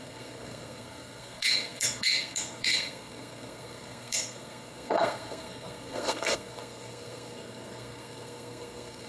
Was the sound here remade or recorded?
remade